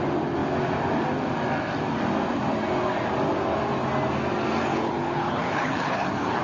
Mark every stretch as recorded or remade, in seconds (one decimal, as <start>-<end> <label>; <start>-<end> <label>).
0.0-4.7 recorded; 4.7-6.4 remade